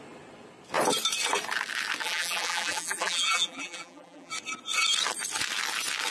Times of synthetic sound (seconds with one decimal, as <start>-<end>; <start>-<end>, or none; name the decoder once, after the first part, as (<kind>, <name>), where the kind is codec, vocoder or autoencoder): 2.0-4.3 (vocoder, BigVGAN v2)